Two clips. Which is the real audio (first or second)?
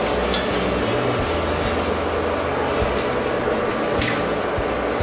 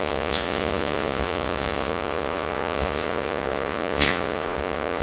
first